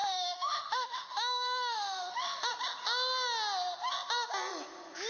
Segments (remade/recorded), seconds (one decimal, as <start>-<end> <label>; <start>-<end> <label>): 0.0-2.5 remade; 2.5-5.1 recorded